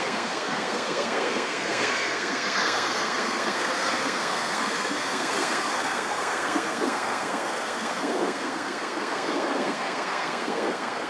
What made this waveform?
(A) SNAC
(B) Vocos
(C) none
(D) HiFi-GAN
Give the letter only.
A